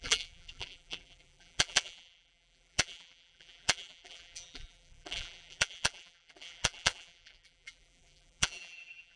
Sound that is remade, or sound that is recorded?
remade